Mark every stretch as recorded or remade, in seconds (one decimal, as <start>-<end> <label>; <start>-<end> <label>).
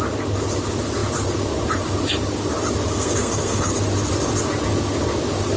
0.0-2.9 recorded; 2.9-3.7 remade; 3.7-5.6 recorded